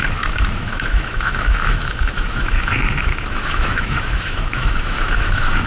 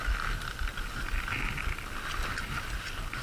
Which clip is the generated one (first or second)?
first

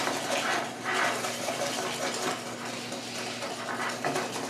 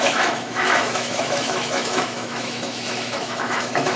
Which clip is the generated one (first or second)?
second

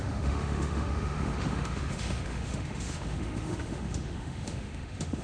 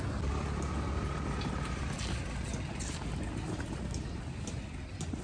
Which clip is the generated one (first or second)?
first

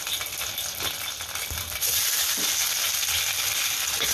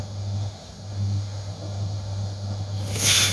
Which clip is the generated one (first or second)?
second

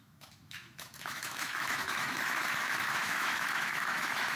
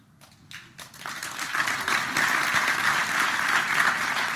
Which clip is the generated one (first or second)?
first